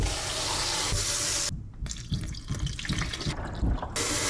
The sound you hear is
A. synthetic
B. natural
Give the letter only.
B